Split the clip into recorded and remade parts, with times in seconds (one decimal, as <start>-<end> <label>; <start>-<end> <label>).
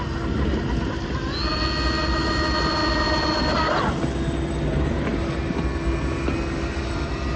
0.0-7.4 recorded